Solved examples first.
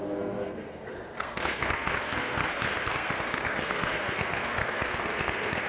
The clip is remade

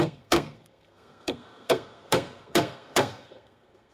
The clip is remade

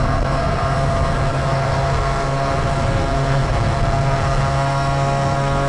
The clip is remade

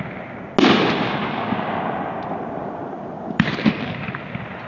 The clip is recorded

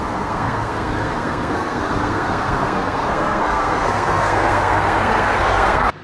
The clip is remade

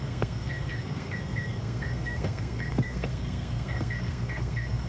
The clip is remade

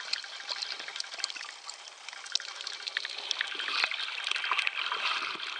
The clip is recorded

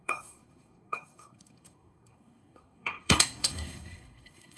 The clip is remade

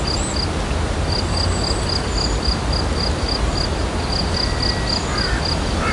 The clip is recorded